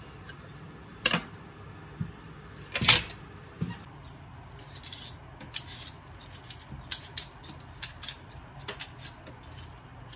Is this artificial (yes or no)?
no